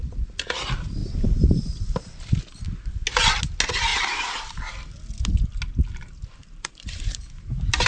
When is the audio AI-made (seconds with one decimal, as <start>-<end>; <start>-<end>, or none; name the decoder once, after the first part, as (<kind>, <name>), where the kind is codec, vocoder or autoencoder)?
1.0-2.4 (vocoder, BigVGAN v2); 3.9-4.7; 6.4-7.9